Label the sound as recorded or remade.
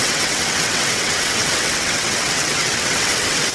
remade